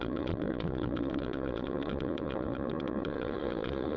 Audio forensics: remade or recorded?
remade